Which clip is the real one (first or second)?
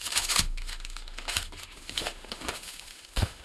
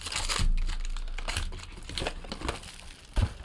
second